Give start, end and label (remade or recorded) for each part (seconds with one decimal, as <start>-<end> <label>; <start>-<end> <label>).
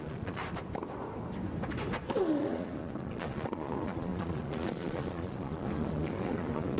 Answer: 0.0-0.4 remade; 0.4-2.2 recorded; 2.2-6.8 remade